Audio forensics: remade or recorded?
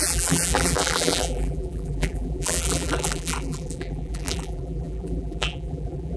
remade